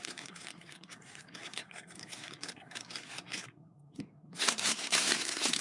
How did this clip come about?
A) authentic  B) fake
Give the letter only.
B